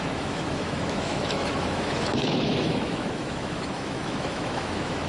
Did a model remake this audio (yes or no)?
yes